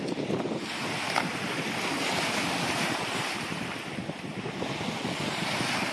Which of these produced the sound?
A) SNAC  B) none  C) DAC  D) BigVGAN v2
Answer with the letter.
B